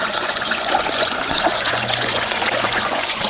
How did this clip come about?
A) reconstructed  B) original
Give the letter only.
A